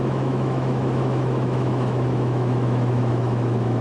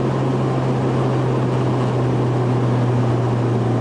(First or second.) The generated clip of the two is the first